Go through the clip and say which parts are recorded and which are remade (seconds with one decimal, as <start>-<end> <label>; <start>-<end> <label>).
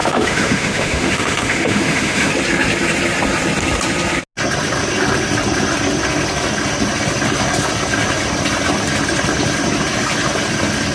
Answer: 0.0-2.3 remade; 2.3-10.9 recorded